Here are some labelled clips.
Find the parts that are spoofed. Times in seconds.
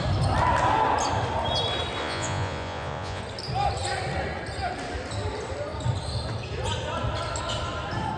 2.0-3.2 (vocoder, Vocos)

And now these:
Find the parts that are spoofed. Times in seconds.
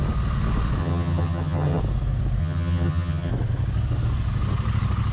0.8-1.8 (vocoder, HiFi-GAN); 2.4-3.3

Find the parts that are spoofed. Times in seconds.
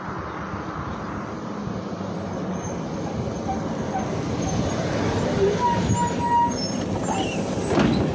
none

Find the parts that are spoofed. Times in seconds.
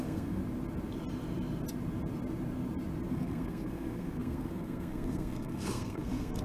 0.0-0.4 (codec, SNAC); 3.1-6.4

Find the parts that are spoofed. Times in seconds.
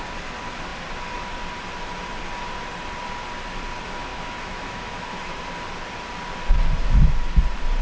4.1-5.4 (autoencoder, DAC-VAE)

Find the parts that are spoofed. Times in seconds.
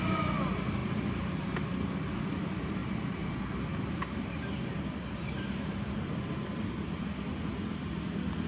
none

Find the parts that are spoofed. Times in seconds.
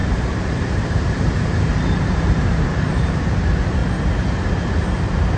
0.0-3.8 (vocoder, BigVGAN v2); 4.7-5.4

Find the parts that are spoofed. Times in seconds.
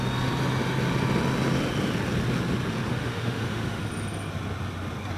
2.9-3.8 (autoencoder, DAC-VAE)